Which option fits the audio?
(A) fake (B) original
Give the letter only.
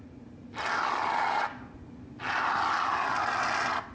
B